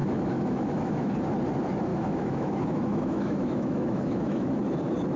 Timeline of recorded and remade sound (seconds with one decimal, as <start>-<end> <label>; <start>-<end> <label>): 0.0-1.1 remade; 1.1-1.9 recorded; 1.9-4.5 remade; 4.5-5.2 recorded